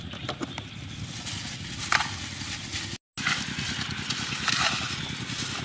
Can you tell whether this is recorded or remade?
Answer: recorded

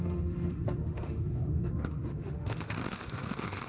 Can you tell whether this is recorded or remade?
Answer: remade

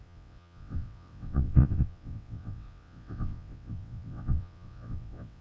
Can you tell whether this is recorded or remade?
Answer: remade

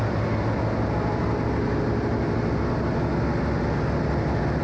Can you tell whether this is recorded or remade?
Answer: recorded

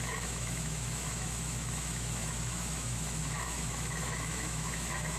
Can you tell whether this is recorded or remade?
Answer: remade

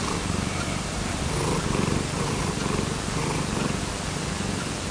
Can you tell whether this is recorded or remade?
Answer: recorded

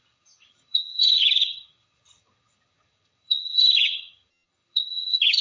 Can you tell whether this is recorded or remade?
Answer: remade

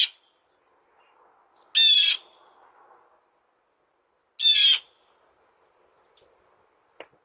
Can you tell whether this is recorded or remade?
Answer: recorded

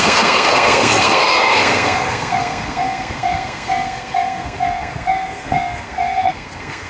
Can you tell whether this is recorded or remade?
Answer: remade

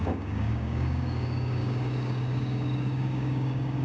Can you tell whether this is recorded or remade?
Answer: remade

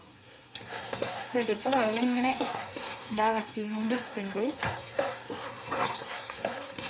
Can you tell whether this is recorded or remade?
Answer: remade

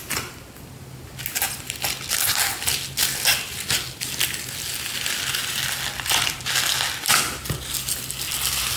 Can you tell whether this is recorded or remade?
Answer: recorded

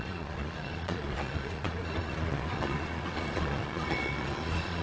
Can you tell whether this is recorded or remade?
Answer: remade